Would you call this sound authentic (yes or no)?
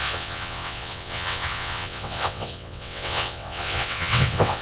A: no